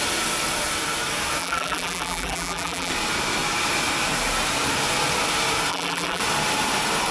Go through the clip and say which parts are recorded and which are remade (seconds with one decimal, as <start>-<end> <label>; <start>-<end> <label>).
0.0-1.4 recorded; 1.4-2.9 remade; 2.9-5.7 recorded; 5.7-6.2 remade; 6.2-7.1 recorded